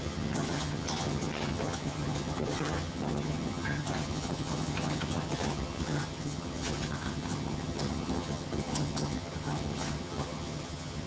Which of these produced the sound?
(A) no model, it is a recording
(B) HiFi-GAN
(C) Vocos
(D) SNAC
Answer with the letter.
B